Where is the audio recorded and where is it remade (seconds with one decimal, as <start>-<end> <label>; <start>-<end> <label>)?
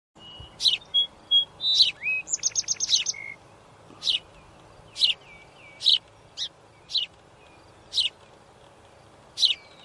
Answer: 0.0-9.8 recorded